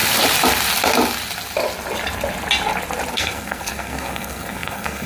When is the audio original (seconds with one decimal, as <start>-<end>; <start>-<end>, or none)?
0.0-3.1